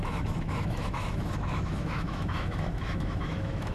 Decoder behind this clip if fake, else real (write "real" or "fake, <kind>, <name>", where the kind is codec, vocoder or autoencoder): fake, autoencoder, DAC-VAE